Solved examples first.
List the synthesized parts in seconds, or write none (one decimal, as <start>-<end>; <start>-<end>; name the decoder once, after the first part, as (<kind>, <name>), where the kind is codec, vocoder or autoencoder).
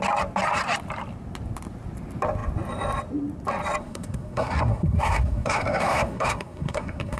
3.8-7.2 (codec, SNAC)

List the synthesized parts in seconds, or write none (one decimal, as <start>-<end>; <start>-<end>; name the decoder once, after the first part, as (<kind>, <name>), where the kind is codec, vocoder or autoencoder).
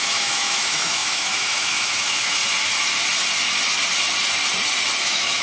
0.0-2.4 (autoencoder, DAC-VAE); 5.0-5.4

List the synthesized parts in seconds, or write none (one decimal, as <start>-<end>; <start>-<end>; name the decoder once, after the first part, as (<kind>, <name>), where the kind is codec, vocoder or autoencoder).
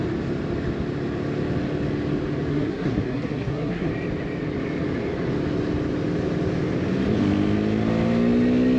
2.5-3.9 (codec, SNAC)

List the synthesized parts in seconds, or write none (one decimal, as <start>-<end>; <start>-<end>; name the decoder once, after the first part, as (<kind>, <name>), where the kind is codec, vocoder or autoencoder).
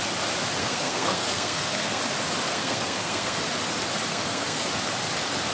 0.6-2.0 (codec, SNAC); 2.5-3.4; 4.1-4.7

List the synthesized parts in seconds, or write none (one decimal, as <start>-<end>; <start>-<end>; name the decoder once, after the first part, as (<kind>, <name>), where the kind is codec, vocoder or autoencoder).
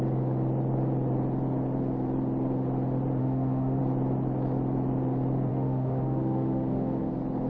3.2-3.8 (autoencoder, DAC-VAE); 5.5-7.1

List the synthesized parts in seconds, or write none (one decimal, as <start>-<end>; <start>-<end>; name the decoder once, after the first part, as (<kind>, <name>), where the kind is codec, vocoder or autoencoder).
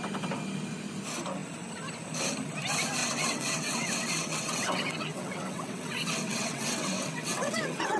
3.0-8.0 (vocoder, WaveNeXt)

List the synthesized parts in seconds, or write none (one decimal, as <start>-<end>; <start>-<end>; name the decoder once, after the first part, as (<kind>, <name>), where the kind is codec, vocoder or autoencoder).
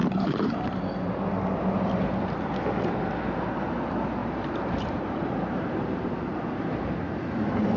0.0-0.7 (vocoder, BigVGAN v2); 4.2-6.8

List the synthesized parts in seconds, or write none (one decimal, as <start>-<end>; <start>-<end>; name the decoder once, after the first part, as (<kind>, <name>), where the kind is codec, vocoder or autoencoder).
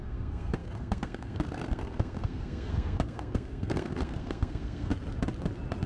0.0-4.9 (codec, SNAC)